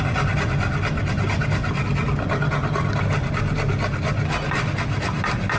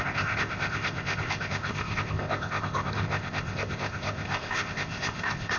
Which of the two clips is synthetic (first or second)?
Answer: second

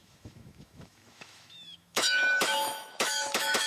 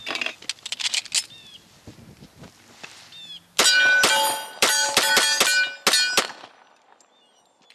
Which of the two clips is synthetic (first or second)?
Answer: first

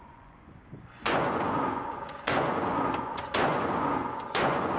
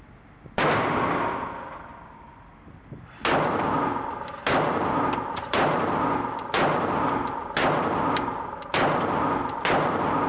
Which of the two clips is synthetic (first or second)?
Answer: first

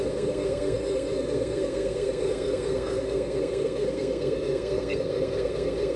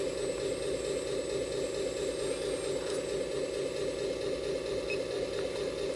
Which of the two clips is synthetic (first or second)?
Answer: first